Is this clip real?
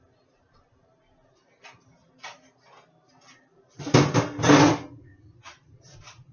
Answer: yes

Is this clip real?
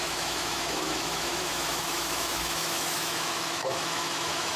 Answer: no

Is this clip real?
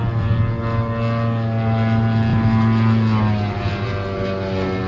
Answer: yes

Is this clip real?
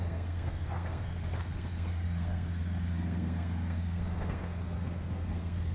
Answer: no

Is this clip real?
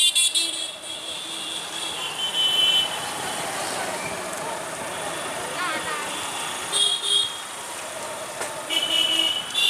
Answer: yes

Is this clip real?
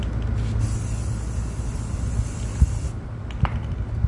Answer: yes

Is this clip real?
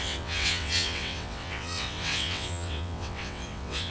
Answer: no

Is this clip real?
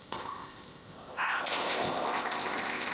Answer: no